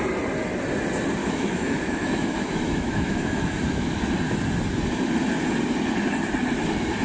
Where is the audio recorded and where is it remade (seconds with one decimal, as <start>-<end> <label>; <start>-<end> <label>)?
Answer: 0.0-1.2 recorded; 1.2-4.0 remade; 4.0-7.0 recorded